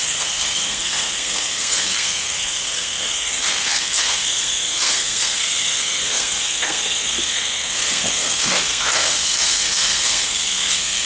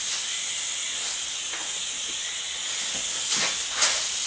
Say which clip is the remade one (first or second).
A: first